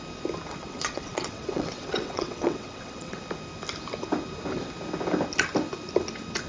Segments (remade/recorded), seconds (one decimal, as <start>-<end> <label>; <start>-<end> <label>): 0.0-0.6 recorded; 0.6-3.2 remade; 3.2-6.5 recorded